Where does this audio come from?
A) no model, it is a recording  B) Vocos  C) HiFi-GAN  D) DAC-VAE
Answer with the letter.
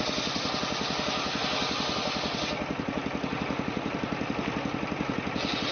A